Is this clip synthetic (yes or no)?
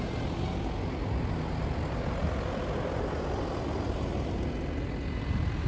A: no